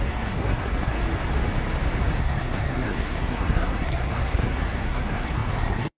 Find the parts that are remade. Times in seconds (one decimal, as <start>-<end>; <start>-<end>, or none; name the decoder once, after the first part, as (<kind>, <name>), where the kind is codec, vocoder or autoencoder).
0.0-1.0 (codec, SNAC); 2.2-6.0